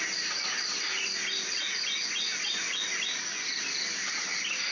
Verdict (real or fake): real